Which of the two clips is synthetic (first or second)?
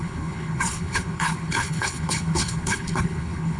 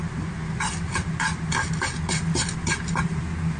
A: first